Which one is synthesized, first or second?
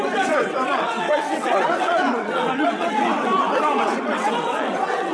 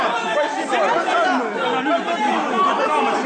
first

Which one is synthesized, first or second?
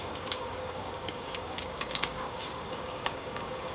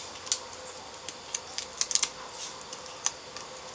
first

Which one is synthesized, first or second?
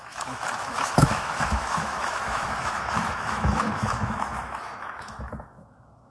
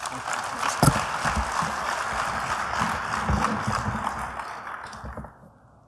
first